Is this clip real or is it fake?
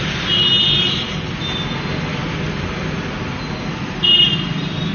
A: fake